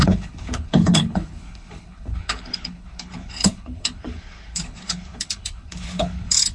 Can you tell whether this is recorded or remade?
remade